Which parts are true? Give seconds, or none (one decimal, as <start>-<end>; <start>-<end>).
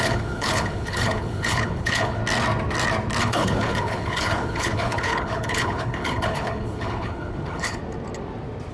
2.2-3.2; 7.8-8.7